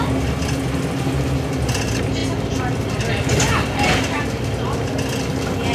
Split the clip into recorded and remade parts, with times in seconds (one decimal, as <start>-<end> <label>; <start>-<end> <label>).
0.0-5.7 recorded

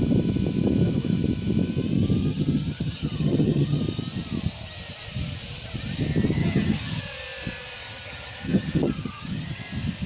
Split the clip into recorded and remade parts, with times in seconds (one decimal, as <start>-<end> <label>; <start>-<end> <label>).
0.0-2.2 recorded; 2.2-3.8 remade; 3.8-6.4 recorded; 6.4-7.0 remade; 7.0-7.8 recorded; 7.8-9.6 remade; 9.6-10.1 recorded

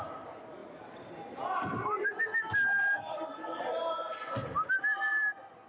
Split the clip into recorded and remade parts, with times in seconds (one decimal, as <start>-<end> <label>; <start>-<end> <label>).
0.0-5.7 recorded